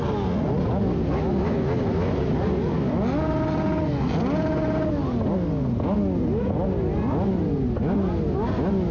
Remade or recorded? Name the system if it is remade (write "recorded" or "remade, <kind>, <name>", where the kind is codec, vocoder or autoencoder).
recorded